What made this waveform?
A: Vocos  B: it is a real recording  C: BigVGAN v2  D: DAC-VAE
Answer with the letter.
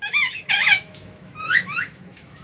D